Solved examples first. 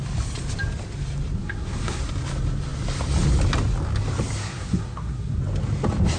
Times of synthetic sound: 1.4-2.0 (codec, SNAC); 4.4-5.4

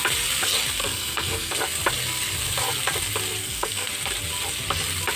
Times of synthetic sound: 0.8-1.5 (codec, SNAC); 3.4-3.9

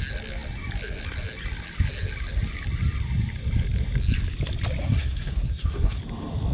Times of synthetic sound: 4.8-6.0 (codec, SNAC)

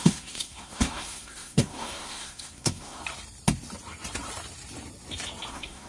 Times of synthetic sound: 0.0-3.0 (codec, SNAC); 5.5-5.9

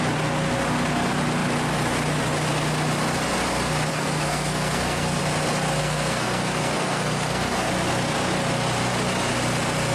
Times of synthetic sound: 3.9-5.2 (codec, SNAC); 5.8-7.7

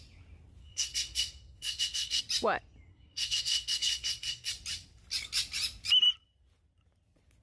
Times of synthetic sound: 0.6-2.2 (codec, SNAC); 2.9-4.5